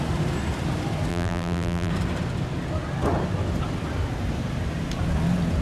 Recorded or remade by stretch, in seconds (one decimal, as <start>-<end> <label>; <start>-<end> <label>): 0.0-1.1 recorded; 1.1-1.9 remade; 1.9-5.6 recorded